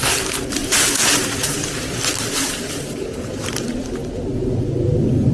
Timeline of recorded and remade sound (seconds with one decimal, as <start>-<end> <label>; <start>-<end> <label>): 0.0-0.6 recorded; 0.6-3.8 remade; 3.8-5.3 recorded